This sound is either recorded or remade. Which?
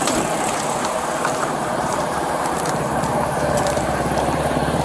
remade